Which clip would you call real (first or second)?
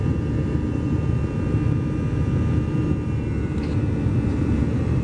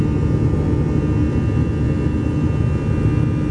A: second